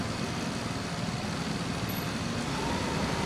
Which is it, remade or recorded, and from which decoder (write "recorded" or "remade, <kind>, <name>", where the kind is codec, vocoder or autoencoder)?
recorded